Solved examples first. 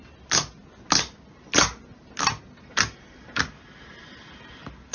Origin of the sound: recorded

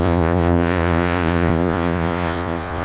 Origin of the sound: remade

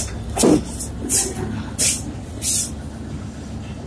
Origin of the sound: recorded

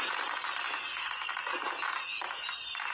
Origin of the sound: recorded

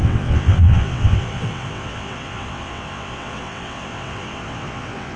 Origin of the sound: remade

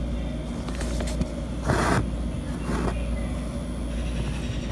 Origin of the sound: recorded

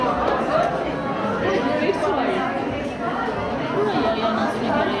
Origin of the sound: recorded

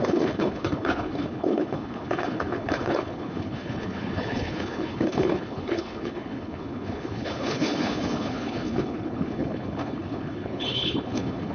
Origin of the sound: remade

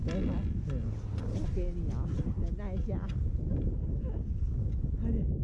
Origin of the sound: recorded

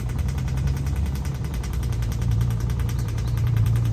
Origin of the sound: remade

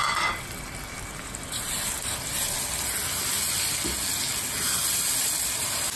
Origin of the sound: recorded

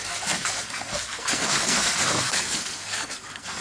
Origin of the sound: remade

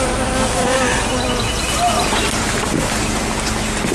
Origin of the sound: recorded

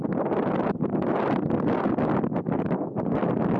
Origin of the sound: recorded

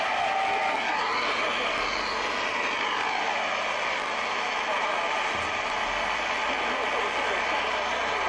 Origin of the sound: recorded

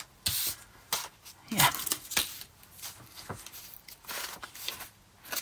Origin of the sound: recorded